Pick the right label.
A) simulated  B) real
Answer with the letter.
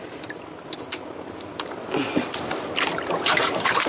B